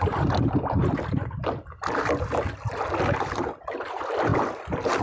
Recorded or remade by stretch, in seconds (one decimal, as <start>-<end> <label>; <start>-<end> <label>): 0.0-4.3 recorded; 4.3-5.0 remade